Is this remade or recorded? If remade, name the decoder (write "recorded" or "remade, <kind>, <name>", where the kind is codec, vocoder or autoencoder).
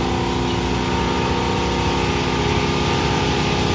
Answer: recorded